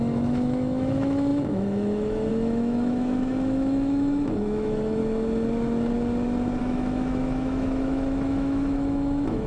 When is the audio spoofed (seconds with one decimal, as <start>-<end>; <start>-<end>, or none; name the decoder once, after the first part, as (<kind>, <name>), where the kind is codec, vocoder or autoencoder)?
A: 0.0-5.0 (autoencoder, DAC-VAE); 6.6-9.5